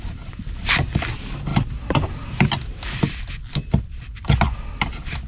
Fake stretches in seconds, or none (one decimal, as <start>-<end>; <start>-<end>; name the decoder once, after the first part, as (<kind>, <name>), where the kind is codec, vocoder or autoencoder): 0.0-5.3 (vocoder, BigVGAN v2)